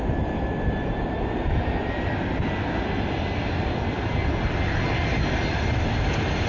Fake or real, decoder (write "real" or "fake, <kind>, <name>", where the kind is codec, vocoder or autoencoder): real